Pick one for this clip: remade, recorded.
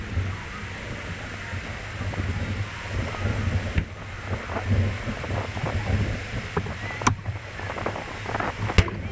recorded